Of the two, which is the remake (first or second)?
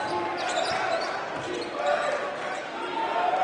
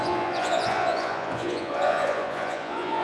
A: second